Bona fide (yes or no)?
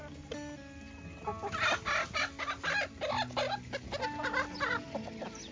yes